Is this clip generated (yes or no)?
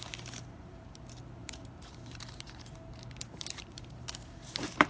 yes